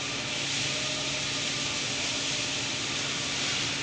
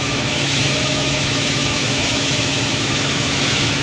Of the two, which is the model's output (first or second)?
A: second